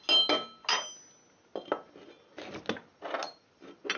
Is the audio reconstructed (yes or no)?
no